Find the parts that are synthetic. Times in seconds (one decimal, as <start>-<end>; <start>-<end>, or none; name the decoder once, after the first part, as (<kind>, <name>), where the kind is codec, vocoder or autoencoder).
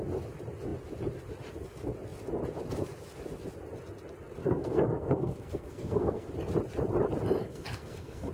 4.4-6.3 (codec, SNAC); 7.4-8.3